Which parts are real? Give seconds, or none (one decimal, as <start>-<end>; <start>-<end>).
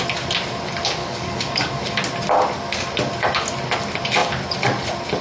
0.0-1.0; 1.8-5.2